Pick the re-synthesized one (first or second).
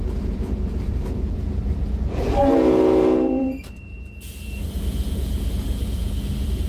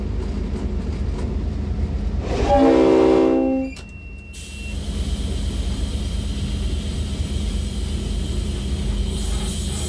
first